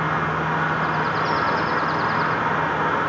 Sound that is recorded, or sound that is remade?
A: recorded